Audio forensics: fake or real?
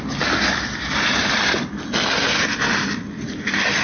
real